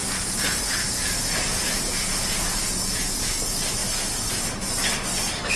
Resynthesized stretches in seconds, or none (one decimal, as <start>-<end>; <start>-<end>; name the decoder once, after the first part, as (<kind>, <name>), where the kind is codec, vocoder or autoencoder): 0.0-3.4 (vocoder, Vocos)